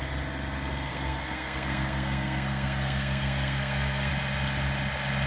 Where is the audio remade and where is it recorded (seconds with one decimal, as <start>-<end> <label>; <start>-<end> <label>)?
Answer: 0.0-0.9 recorded; 0.9-4.1 remade; 4.1-5.3 recorded